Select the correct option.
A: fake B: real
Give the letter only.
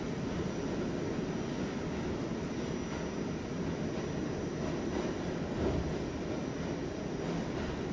B